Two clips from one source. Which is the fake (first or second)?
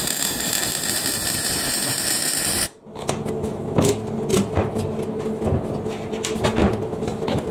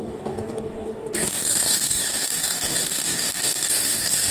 second